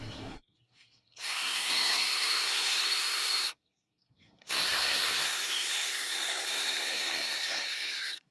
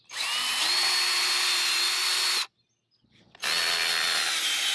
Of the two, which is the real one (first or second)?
second